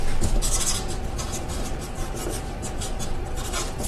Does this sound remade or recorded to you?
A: recorded